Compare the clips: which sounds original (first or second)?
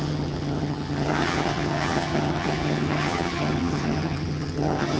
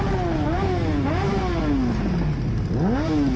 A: second